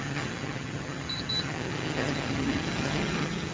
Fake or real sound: fake